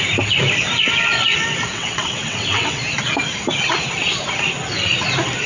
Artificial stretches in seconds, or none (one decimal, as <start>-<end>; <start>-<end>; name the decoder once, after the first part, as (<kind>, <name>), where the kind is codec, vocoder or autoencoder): 1.7-2.8 (vocoder, WaveNeXt)